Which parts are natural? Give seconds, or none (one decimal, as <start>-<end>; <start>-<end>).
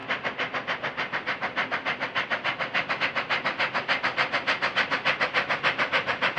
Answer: 0.0-6.4